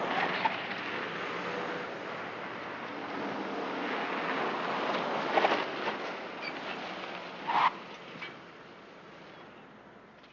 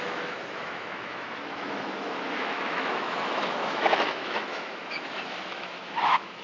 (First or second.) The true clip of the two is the first